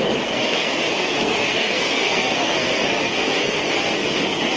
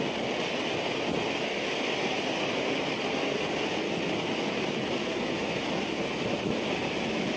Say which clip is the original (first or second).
second